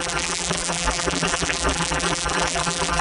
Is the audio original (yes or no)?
no